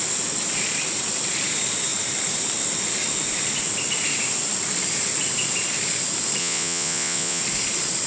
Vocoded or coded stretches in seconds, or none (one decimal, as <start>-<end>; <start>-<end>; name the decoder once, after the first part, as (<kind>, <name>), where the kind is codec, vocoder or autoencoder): 6.4-7.4 (vocoder, Vocos)

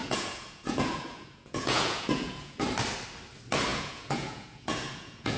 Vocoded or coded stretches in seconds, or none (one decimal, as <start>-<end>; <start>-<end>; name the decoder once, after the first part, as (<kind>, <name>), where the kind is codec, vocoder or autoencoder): 0.0-2.6 (vocoder, Vocos); 3.7-5.4

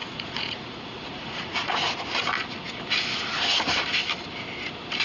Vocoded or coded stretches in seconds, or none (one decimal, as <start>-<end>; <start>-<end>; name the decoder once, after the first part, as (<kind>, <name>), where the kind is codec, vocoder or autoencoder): 0.0-1.9 (vocoder, Vocos)

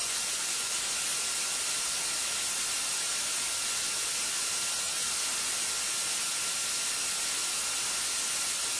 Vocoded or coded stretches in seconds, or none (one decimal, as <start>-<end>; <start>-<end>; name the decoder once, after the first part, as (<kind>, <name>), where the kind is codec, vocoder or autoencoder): 0.0-0.7 (vocoder, Vocos)

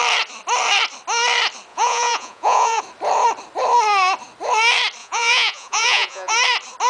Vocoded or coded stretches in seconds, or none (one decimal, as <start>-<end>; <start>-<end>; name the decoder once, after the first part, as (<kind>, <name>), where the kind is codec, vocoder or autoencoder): 1.7-2.8 (vocoder, Vocos); 5.0-6.3

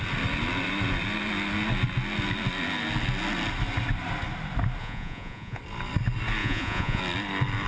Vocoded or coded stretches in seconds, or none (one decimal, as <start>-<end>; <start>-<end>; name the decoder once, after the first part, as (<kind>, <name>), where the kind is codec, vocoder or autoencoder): 4.8-5.6 (vocoder, Vocos); 6.4-7.0

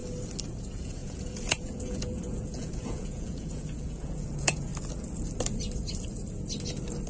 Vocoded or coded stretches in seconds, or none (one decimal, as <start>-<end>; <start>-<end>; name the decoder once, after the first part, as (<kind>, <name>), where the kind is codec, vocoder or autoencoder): 0.6-4.7 (vocoder, Vocos)